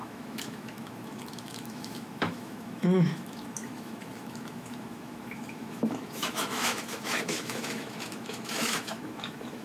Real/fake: fake